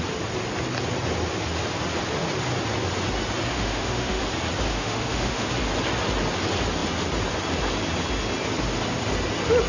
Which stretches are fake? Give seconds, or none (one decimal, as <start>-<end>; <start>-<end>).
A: 3.5-4.2; 4.7-5.5